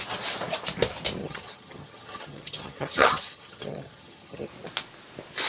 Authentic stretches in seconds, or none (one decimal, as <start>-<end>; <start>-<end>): 0.0-1.2; 4.5-5.5

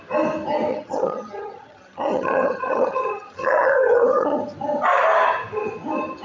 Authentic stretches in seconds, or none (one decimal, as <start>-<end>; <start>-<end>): 0.0-0.7; 4.4-6.2

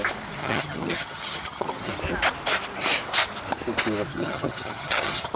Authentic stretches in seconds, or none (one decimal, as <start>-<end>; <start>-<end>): 0.0-0.4; 1.9-4.1